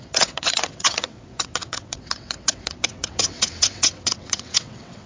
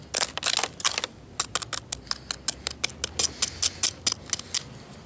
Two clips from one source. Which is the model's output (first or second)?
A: first